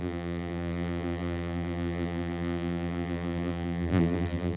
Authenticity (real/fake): fake